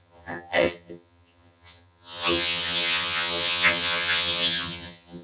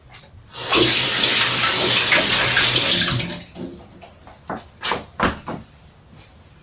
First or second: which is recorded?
second